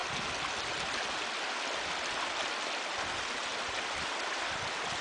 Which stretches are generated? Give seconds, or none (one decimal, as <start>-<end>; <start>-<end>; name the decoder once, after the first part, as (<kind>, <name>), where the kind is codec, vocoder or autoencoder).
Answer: 3.5-4.5 (vocoder, BigVGAN v2)